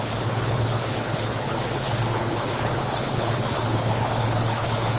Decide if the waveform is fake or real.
fake